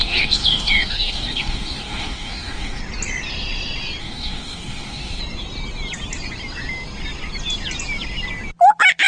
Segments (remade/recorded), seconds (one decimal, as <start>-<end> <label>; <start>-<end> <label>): 0.0-2.8 remade; 2.8-4.0 recorded; 4.0-5.2 remade; 5.2-9.1 recorded